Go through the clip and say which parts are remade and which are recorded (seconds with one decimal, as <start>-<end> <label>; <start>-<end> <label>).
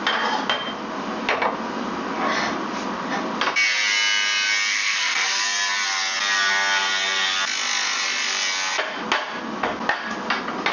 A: 0.0-4.7 recorded; 4.7-5.4 remade; 5.4-10.7 recorded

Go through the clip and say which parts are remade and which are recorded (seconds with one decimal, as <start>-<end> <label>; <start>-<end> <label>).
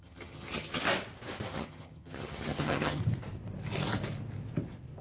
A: 0.0-0.8 remade; 0.8-1.5 recorded; 1.5-3.0 remade; 3.0-5.0 recorded